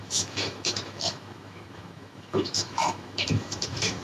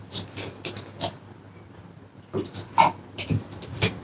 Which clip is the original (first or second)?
second